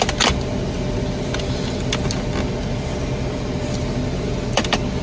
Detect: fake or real real